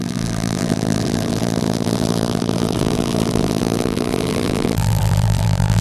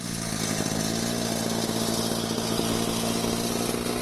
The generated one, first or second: first